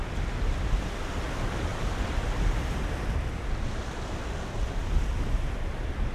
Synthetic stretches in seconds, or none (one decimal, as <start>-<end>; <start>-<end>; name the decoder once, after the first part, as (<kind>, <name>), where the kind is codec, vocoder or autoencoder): none